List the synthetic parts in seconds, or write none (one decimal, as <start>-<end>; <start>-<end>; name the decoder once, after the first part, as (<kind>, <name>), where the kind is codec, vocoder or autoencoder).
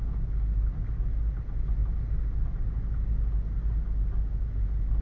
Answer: 1.8-2.6 (vocoder, BigVGAN v2)